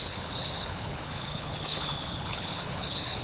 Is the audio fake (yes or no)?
yes